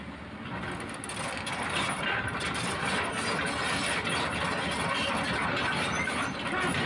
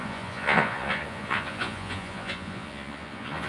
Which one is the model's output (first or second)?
second